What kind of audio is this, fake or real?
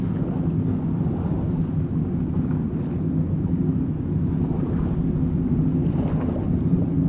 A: real